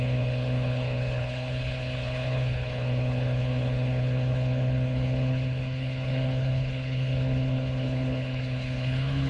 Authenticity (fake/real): fake